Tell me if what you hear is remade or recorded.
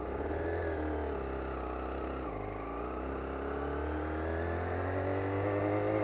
recorded